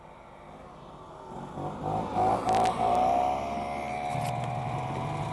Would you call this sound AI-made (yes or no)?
no